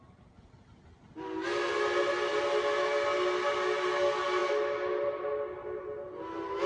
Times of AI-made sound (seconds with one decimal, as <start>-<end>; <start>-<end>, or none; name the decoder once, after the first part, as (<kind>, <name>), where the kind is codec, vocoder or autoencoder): none

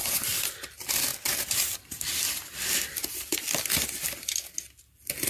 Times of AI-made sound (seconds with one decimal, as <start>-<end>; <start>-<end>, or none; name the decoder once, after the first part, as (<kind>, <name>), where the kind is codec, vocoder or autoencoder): none